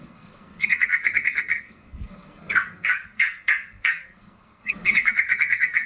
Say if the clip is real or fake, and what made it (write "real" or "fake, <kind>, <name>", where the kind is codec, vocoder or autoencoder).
fake, codec, SNAC